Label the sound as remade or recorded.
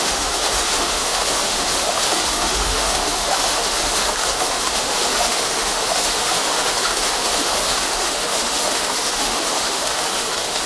remade